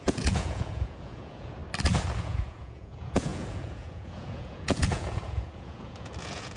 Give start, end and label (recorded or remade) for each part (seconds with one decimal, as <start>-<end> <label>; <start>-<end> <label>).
0.0-1.6 remade; 1.6-2.2 recorded; 2.2-6.6 remade